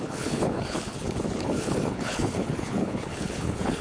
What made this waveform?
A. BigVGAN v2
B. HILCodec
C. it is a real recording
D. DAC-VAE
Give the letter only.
B